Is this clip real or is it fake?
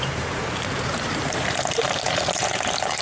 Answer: fake